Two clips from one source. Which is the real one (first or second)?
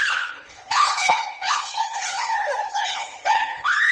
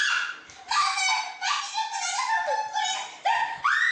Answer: second